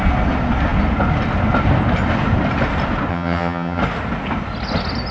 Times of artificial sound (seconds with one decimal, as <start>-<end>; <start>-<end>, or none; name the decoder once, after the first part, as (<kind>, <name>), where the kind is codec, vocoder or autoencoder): 3.1-3.8 (vocoder, HiFi-GAN)